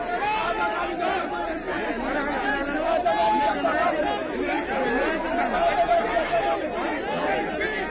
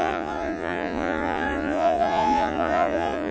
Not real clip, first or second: second